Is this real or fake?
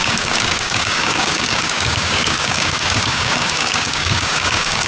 fake